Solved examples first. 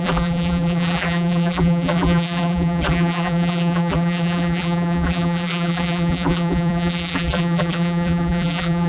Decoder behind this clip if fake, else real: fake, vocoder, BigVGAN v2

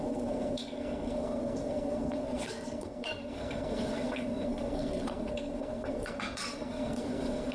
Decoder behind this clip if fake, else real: fake, codec, SNAC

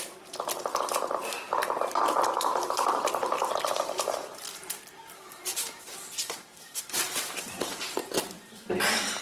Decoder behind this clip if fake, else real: fake, vocoder, BigVGAN v2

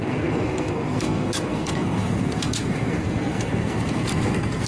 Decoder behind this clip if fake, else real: fake, codec, SNAC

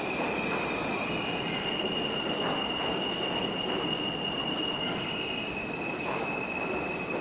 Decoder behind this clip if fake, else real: real